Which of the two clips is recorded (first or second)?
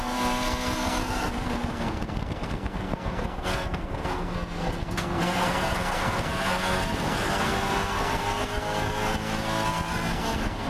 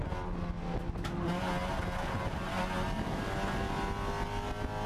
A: second